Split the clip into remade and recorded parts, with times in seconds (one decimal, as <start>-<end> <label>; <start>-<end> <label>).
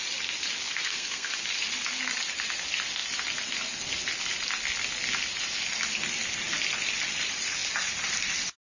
0.0-0.6 recorded; 0.6-1.3 remade; 1.3-8.7 recorded